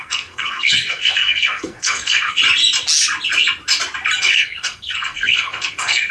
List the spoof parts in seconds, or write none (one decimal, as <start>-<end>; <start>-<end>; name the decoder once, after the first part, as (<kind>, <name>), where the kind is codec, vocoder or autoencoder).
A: 0.0-2.4 (codec, SNAC); 4.2-6.1

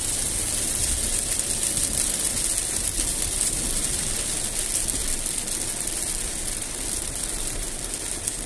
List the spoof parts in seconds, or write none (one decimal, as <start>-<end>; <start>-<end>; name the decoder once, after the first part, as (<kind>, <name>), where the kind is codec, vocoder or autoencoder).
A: none

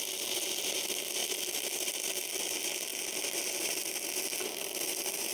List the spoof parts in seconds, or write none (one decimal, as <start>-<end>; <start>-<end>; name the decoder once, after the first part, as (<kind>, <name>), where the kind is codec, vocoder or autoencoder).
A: none

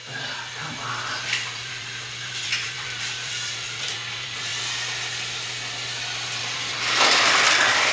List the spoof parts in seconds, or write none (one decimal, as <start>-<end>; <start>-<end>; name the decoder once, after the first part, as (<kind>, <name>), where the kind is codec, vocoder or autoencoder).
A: 0.0-4.5 (vocoder, BigVGAN v2); 6.4-7.9

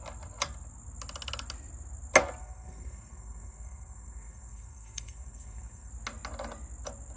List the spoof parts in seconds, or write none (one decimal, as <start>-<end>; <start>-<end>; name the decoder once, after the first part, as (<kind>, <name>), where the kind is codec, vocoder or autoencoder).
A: 2.4-5.9 (codec, SNAC)

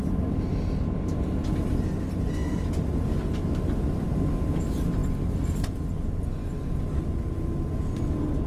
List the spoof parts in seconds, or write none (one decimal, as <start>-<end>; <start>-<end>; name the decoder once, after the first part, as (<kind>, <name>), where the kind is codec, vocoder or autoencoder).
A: none